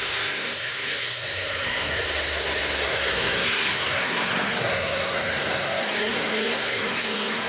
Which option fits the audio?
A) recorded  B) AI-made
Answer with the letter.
B